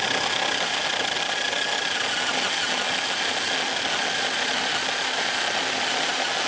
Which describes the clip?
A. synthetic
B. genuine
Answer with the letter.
B